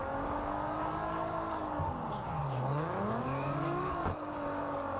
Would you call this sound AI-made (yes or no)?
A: yes